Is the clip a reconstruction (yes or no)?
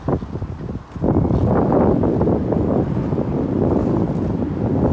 no